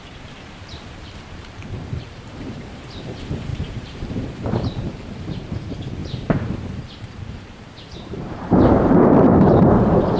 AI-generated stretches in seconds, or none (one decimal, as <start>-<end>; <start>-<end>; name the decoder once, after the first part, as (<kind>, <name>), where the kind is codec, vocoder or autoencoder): 0.0-6.0 (vocoder, BigVGAN v2); 6.8-10.2